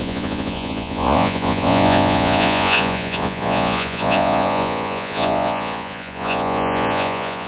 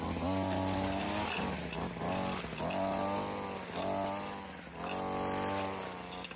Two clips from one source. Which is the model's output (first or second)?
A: first